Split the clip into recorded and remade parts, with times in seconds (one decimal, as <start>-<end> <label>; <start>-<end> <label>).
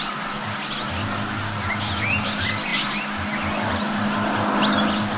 0.0-5.2 recorded